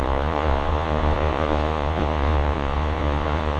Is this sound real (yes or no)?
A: no